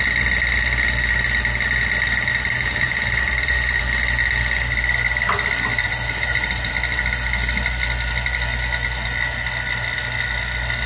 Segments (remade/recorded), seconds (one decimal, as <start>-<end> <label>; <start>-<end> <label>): 0.0-2.3 recorded; 2.3-3.8 remade; 3.8-5.7 recorded; 5.7-6.7 remade; 6.7-10.9 recorded